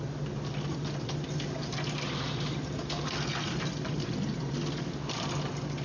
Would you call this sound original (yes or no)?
yes